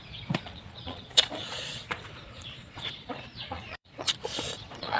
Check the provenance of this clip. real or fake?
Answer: fake